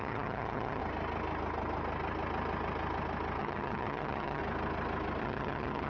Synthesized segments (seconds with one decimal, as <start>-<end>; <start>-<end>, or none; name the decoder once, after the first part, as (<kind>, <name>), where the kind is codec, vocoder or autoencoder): 0.0-0.8 (vocoder, HiFi-GAN); 3.4-4.4; 5.2-5.9